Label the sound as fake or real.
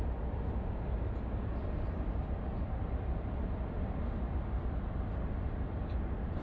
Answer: real